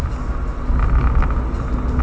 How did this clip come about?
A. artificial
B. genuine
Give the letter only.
B